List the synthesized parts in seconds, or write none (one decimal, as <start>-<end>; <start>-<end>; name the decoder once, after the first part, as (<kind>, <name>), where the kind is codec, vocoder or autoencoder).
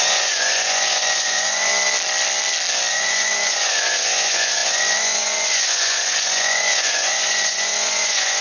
0.0-1.7 (vocoder, Vocos); 2.9-8.4